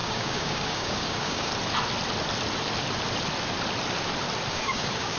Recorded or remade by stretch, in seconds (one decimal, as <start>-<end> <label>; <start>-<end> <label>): 0.0-1.5 remade; 1.5-4.5 recorded; 4.5-5.2 remade